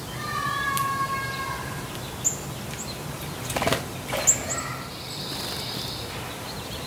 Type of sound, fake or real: real